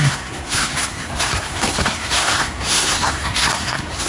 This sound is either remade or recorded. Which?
remade